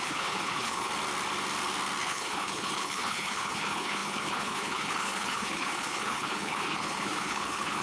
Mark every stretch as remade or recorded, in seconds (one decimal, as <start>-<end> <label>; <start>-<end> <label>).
0.0-0.9 remade; 0.9-2.0 recorded; 2.0-7.8 remade